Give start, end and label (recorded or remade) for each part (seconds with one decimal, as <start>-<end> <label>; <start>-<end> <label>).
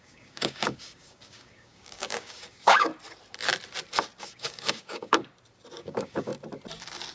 0.0-2.9 remade; 2.9-4.2 recorded; 4.2-5.2 remade; 5.2-5.8 recorded; 5.8-6.3 remade; 6.3-7.1 recorded